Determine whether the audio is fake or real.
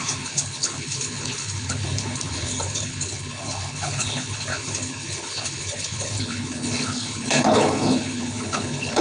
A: fake